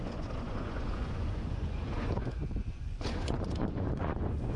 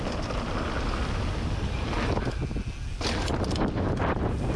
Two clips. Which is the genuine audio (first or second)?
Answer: second